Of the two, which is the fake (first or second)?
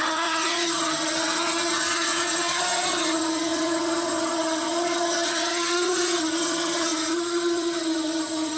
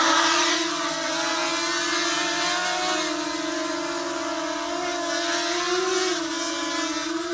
first